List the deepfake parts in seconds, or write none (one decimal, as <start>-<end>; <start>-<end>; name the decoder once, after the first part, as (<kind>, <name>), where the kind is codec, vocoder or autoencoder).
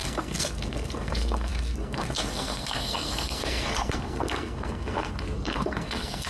0.0-6.3 (codec, SNAC)